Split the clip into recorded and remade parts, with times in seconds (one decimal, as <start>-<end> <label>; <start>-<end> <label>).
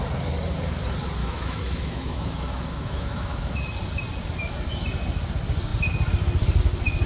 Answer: 0.0-1.2 recorded; 1.2-3.5 remade; 3.5-7.1 recorded